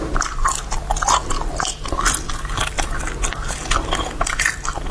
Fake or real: real